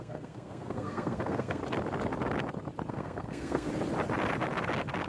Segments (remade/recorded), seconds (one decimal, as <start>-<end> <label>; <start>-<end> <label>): 0.0-1.6 remade; 1.6-2.9 recorded; 2.9-3.7 remade; 3.7-5.1 recorded